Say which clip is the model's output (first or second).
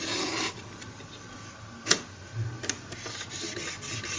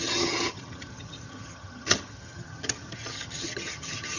second